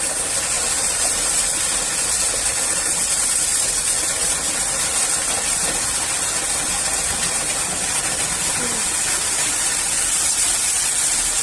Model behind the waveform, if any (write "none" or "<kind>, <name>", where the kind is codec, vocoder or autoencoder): none